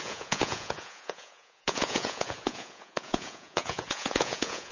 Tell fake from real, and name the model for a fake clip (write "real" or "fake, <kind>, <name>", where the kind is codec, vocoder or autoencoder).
fake, vocoder, Vocos